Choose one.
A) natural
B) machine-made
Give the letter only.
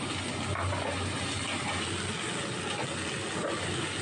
A